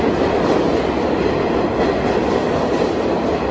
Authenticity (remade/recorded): recorded